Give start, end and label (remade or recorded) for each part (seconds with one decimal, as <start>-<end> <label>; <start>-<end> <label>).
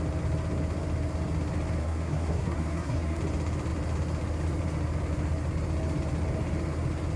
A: 0.0-1.8 recorded; 1.8-3.2 remade; 3.2-7.2 recorded